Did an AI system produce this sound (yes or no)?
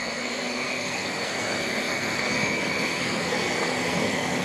yes